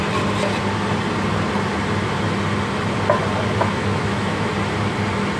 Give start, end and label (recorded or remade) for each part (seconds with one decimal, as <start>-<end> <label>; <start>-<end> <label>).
0.0-3.7 recorded; 3.7-4.5 remade; 4.5-5.4 recorded